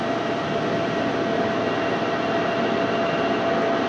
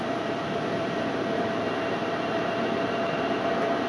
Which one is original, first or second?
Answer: first